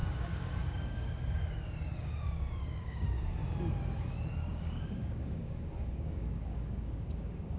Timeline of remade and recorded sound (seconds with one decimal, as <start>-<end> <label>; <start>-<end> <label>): 0.0-3.4 remade; 3.4-4.1 recorded; 4.1-7.6 remade